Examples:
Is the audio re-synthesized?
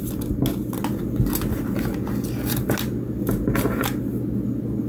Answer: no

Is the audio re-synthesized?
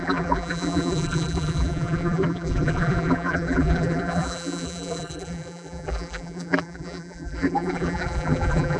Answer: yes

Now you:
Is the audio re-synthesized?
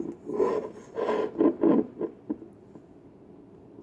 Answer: no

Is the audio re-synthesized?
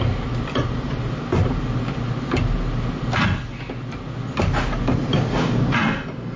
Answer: no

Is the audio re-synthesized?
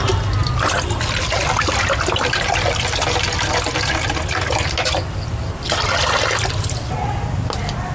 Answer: no